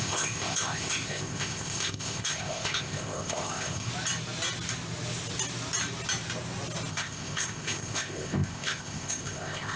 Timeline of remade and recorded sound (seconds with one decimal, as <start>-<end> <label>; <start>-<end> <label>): 0.0-3.9 remade; 3.9-6.9 recorded; 6.9-9.8 remade